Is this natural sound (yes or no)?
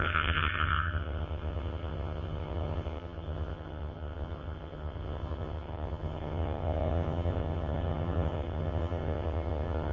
no